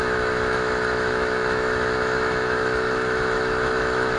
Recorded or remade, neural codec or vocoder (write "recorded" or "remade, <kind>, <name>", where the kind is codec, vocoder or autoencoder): remade, autoencoder, DAC-VAE